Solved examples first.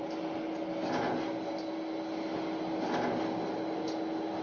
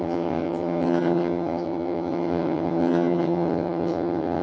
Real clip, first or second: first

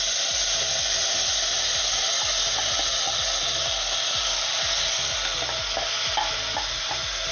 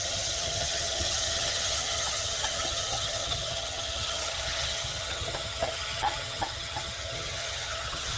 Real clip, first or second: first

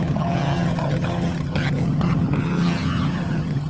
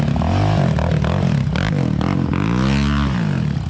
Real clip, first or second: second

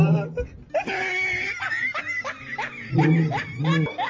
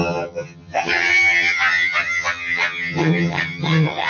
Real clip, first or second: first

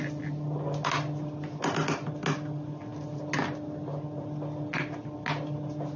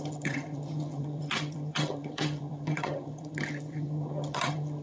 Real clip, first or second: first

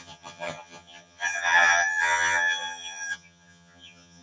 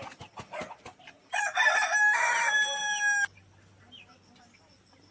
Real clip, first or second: second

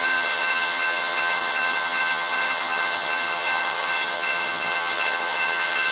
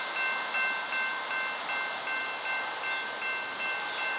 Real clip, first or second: second